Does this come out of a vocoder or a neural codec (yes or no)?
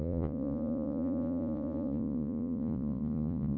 yes